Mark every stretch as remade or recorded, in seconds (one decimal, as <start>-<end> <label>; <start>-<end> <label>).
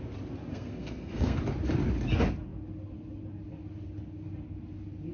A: 0.0-0.5 recorded; 0.5-1.4 remade; 1.4-5.1 recorded